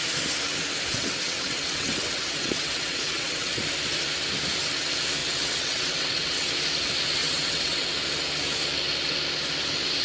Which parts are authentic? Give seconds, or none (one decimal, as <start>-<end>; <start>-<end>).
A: 0.0-0.9; 3.6-5.2; 6.5-7.2; 7.9-10.0

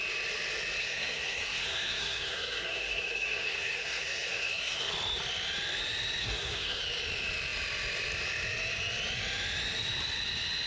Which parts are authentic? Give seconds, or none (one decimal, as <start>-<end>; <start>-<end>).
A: 0.0-0.8; 4.9-6.2; 6.8-10.7

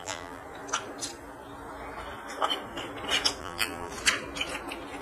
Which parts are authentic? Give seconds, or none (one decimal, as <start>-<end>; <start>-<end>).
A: 0.4-3.4; 3.9-5.0

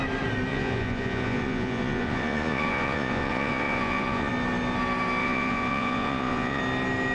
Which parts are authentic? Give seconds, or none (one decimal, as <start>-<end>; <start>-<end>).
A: 0.0-0.5; 4.3-5.2; 6.6-7.1

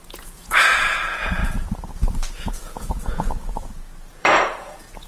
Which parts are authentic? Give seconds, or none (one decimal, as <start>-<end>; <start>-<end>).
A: 1.4-2.3; 3.6-4.1

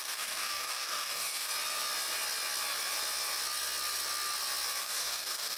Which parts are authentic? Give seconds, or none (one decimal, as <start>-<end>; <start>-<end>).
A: 1.5-4.8

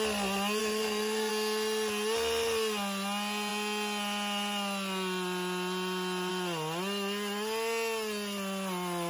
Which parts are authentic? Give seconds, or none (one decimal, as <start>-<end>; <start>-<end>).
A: 0.0-0.6; 1.3-9.1

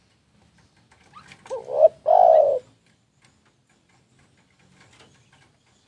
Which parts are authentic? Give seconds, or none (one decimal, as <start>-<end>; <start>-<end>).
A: 0.0-5.9